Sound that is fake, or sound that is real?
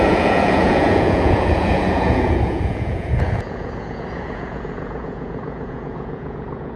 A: fake